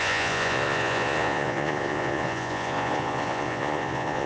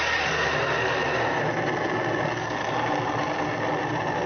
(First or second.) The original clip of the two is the second